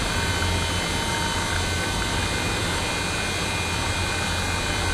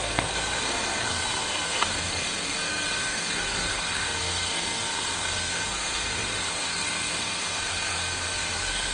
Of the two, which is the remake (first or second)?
second